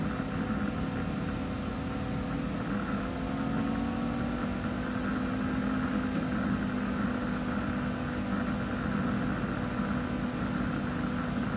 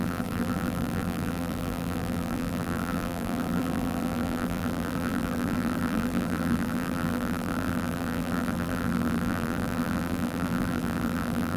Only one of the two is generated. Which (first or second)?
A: second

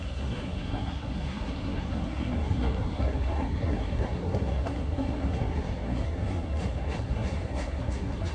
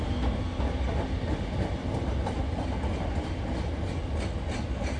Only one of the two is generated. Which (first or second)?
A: first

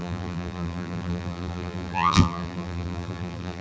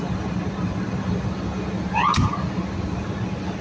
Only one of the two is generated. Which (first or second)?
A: first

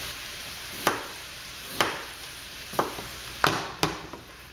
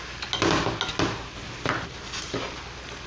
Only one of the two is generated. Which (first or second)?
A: first